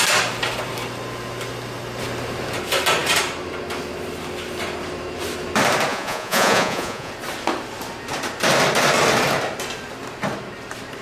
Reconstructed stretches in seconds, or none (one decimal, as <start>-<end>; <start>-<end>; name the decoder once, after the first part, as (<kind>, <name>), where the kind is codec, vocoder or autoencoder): 5.9-7.1 (vocoder, Vocos)